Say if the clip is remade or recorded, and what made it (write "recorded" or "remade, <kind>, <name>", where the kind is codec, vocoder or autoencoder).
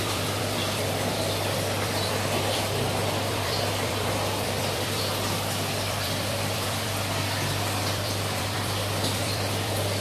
remade, vocoder, BigVGAN v2